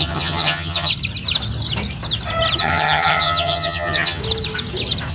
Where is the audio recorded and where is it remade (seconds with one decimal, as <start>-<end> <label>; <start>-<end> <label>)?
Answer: 0.0-0.9 remade; 0.9-2.6 recorded; 2.6-4.2 remade; 4.2-5.1 recorded